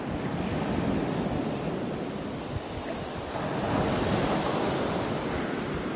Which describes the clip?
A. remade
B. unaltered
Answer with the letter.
B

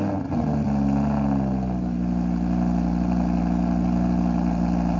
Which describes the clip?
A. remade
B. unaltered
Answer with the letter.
B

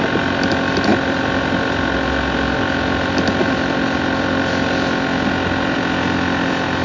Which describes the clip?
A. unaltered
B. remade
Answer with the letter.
A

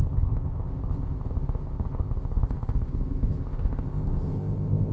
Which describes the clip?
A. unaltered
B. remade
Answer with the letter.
B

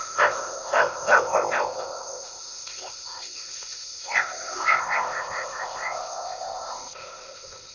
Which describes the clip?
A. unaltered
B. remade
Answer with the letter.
B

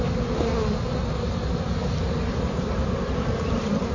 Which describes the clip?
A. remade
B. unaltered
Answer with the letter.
B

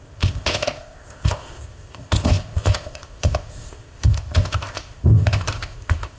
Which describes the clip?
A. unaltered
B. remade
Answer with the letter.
B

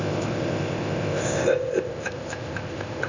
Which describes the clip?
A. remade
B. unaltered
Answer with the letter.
A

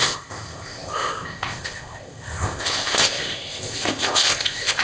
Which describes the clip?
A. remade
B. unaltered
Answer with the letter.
A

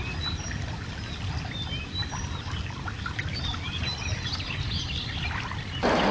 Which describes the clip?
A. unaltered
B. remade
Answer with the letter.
A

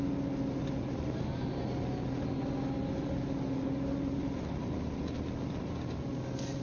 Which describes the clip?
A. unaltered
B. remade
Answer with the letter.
A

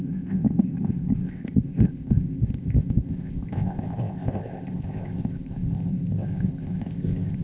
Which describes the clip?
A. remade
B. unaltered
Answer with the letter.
A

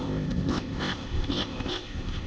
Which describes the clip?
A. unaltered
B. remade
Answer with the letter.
B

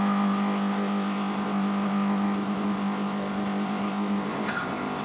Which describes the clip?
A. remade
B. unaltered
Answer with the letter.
A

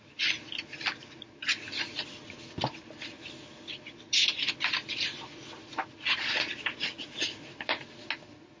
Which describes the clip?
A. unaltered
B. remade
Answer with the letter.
A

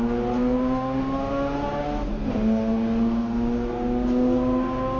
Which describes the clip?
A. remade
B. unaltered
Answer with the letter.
B